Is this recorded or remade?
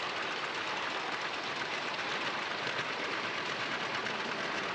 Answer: recorded